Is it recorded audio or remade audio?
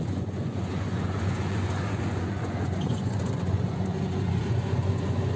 remade